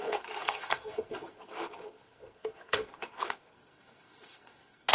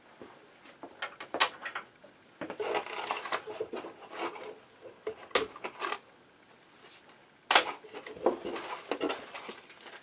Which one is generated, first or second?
first